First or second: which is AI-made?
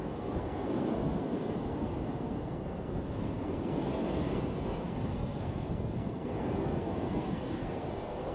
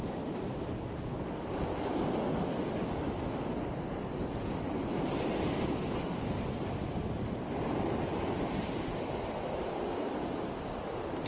first